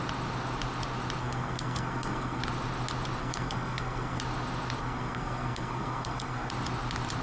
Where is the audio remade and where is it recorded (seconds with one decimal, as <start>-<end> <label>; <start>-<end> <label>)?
0.0-1.2 recorded; 1.2-2.4 remade; 2.4-3.2 recorded; 3.2-4.2 remade; 4.2-4.8 recorded; 4.8-6.5 remade; 6.5-7.2 recorded